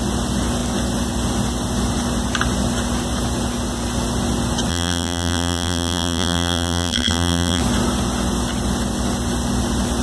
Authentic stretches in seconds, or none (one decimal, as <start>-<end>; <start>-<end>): 0.0-4.7; 7.6-10.0